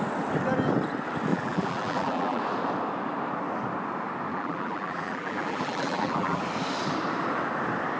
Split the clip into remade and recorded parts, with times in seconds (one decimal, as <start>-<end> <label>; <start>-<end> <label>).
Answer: 0.0-1.3 recorded; 1.3-2.4 remade; 2.4-4.3 recorded; 4.3-6.4 remade; 6.4-8.0 recorded